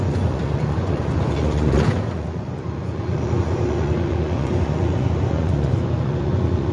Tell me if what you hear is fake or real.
fake